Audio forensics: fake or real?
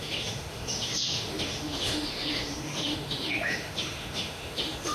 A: fake